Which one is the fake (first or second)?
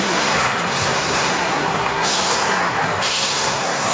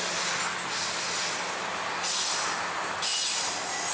first